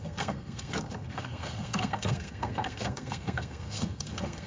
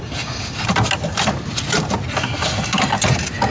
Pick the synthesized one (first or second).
first